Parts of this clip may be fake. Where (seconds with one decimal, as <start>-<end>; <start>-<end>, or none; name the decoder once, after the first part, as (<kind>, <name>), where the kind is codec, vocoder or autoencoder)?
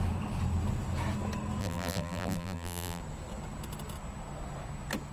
1.6-3.0 (vocoder, BigVGAN v2)